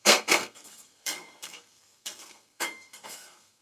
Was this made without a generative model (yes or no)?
no